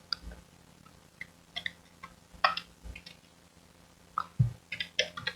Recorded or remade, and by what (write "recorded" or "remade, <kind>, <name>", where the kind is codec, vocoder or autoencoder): recorded